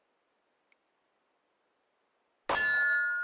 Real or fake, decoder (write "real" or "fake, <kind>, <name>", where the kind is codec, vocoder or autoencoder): real